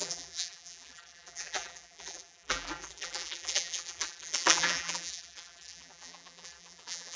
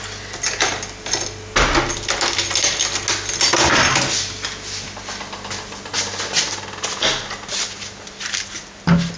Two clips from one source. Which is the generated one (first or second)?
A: first